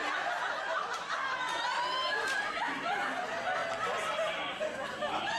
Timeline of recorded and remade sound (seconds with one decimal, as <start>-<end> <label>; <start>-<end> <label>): 0.0-5.4 recorded